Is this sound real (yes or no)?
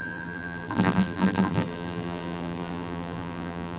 no